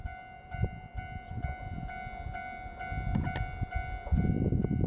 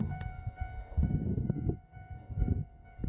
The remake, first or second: second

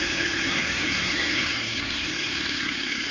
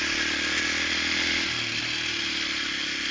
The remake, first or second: first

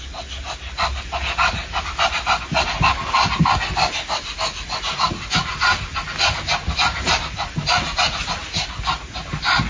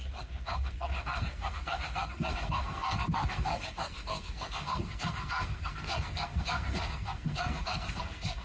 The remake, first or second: second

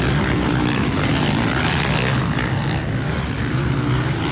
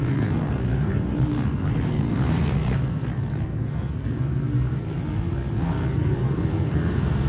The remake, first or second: second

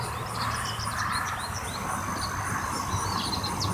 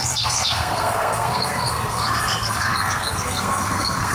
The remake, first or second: second